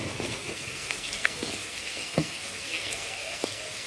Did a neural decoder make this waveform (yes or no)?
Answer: yes